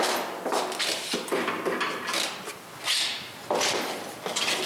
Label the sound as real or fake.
real